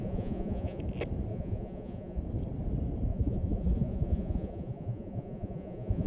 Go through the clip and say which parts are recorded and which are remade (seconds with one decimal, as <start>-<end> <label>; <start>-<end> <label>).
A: 0.0-0.8 remade; 0.8-1.3 recorded; 1.3-2.2 remade; 2.2-3.1 recorded; 3.1-6.1 remade